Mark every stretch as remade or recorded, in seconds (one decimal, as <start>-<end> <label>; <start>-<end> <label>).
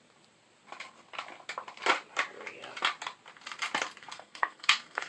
0.0-4.0 recorded; 4.0-5.1 remade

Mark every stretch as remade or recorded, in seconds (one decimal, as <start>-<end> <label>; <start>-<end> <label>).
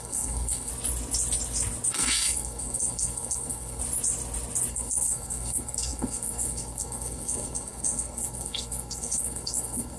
0.0-0.7 remade; 0.7-1.9 recorded; 1.9-3.8 remade; 3.8-4.7 recorded; 4.7-10.0 remade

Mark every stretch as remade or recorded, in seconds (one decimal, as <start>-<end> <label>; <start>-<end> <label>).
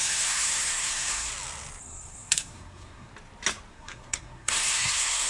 0.0-1.3 remade; 1.3-1.8 recorded; 1.8-3.1 remade; 3.1-3.7 recorded; 3.7-5.3 remade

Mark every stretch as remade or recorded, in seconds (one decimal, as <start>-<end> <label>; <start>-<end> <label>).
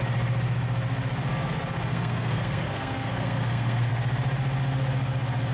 0.0-1.9 recorded; 1.9-3.9 remade; 3.9-5.5 recorded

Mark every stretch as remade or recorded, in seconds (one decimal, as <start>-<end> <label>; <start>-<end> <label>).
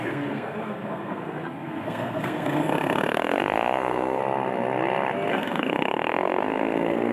0.0-4.2 remade; 4.2-5.3 recorded; 5.3-7.1 remade